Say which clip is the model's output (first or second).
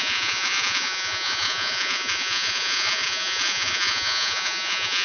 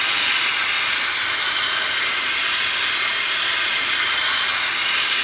first